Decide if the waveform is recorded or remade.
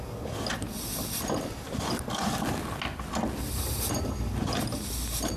recorded